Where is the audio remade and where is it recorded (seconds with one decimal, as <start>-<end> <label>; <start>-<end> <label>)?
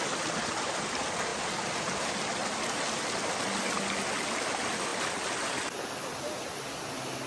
0.0-7.3 recorded